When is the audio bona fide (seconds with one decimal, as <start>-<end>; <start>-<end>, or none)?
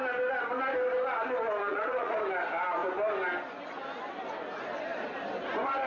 0.0-1.6; 2.1-5.9